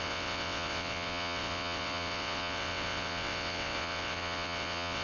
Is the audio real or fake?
fake